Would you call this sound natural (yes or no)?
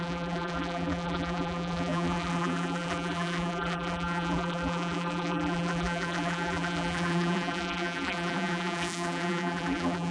no